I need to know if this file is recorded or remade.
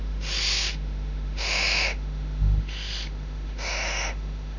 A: remade